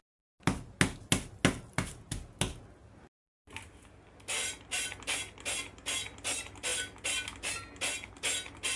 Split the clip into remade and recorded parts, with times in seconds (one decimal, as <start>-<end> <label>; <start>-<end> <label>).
0.0-8.8 recorded